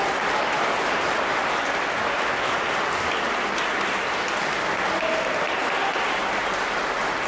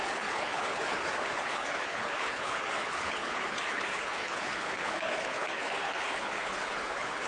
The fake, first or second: second